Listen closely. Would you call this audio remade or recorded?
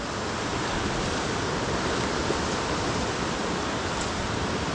recorded